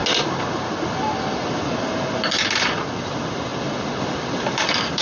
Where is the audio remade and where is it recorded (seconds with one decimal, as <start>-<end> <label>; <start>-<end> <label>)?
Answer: 0.0-3.0 recorded; 3.0-3.5 remade; 3.5-4.5 recorded; 4.5-5.0 remade